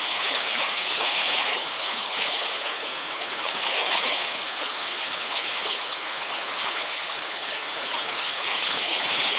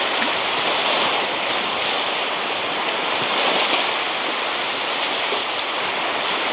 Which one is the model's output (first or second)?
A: first